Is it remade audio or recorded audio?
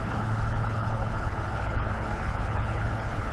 remade